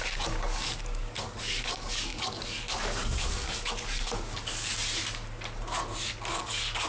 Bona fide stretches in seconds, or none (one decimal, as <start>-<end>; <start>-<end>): 4.7-6.3

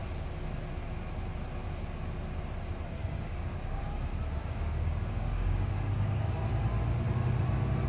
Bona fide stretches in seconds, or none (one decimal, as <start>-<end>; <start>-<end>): 0.0-3.0; 3.8-4.4; 6.3-7.9

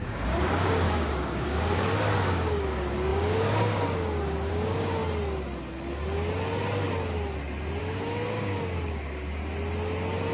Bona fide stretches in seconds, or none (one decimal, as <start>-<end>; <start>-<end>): 5.0-7.8; 9.4-10.3

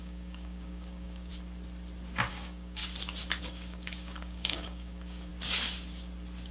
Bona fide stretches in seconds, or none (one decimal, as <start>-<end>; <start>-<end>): 1.3-2.3; 2.8-3.4; 5.3-6.5